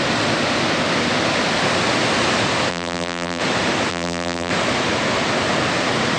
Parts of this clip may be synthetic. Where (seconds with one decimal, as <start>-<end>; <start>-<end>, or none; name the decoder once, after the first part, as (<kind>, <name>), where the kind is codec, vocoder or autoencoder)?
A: 2.7-3.4 (vocoder, BigVGAN v2); 3.9-4.5